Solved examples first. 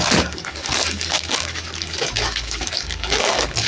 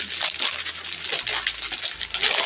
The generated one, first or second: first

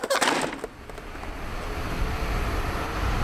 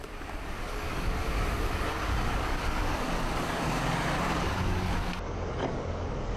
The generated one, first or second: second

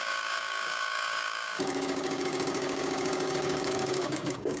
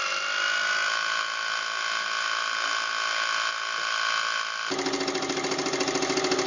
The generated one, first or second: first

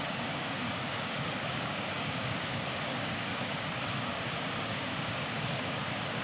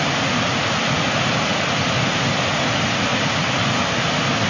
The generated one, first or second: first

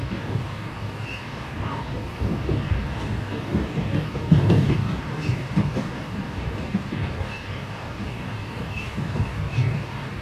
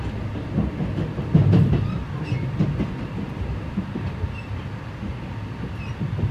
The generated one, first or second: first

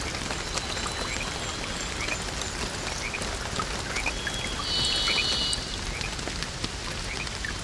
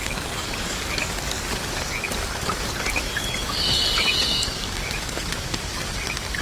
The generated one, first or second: second